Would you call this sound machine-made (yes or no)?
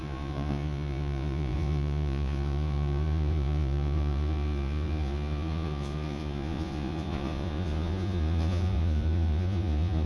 yes